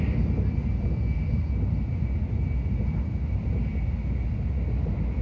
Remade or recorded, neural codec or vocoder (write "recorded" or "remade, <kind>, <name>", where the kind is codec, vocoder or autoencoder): recorded